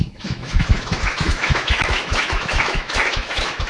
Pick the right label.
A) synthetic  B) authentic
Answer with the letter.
A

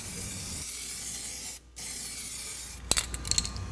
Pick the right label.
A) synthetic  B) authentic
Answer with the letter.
B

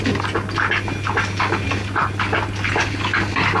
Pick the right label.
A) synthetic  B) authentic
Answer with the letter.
B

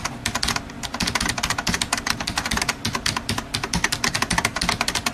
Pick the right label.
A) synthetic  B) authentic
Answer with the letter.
B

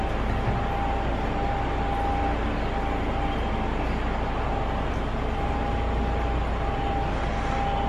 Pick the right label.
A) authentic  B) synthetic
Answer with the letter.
A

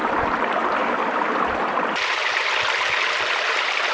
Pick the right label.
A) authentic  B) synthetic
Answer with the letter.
A